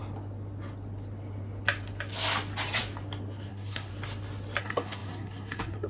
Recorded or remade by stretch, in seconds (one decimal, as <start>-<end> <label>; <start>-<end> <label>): 0.0-3.5 recorded; 3.5-3.9 remade; 3.9-4.6 recorded; 4.6-5.9 remade